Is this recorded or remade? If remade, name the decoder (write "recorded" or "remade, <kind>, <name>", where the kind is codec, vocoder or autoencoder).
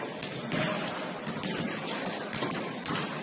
recorded